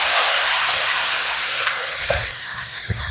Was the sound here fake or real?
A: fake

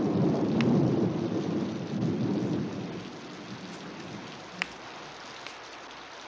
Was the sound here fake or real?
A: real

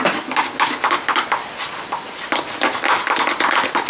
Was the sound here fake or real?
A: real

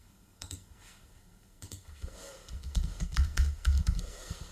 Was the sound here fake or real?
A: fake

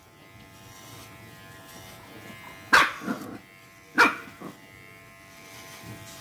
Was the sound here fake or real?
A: real